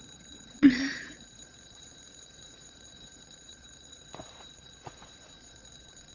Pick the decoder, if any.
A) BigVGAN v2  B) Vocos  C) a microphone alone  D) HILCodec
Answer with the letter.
B